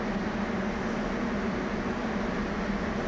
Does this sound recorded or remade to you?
recorded